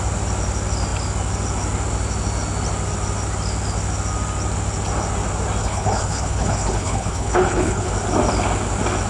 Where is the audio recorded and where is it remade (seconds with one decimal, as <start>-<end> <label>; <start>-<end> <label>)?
0.0-5.6 recorded; 5.6-7.9 remade; 7.9-9.1 recorded